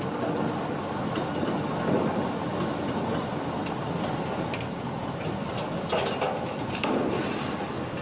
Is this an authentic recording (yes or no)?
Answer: yes